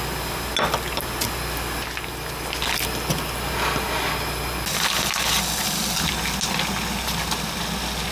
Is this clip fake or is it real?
real